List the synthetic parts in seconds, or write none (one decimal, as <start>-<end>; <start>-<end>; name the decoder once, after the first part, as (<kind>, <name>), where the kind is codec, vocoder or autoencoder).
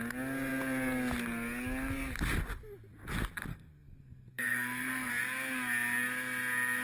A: 3.5-5.1 (codec, SNAC)